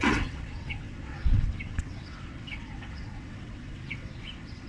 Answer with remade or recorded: remade